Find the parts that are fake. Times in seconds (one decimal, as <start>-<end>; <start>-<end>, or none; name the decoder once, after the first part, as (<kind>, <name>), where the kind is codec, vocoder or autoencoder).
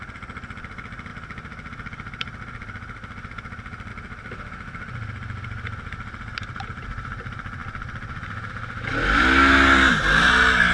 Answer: none